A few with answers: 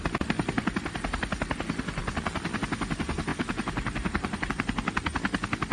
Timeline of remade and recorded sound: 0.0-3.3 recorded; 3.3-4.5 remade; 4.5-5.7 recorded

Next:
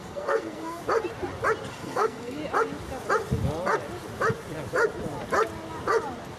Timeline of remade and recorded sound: 0.0-0.8 remade; 0.8-1.7 recorded; 1.7-2.4 remade; 2.4-6.4 recorded

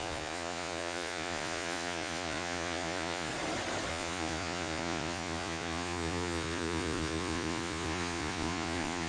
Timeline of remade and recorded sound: 0.0-3.3 remade; 3.3-3.9 recorded; 3.9-9.1 remade

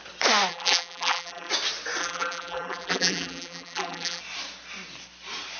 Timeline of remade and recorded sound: 0.0-0.5 recorded; 0.5-1.5 remade; 1.5-2.0 recorded; 2.0-4.2 remade; 4.2-5.6 recorded

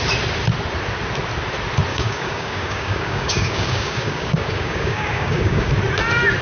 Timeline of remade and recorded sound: 0.0-1.9 recorded; 1.9-5.7 remade; 5.7-6.4 recorded

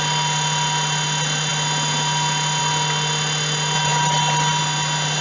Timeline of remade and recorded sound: 0.0-5.2 recorded

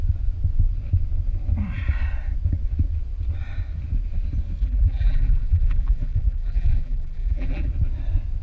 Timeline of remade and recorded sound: 0.0-4.6 recorded; 4.6-7.7 remade; 7.7-8.4 recorded